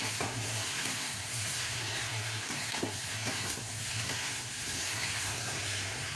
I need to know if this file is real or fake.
fake